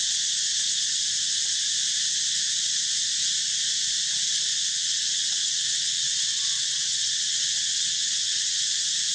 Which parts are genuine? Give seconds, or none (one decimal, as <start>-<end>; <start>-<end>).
0.0-4.5; 8.6-9.1